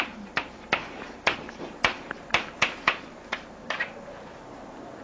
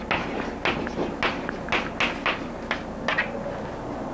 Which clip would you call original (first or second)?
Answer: second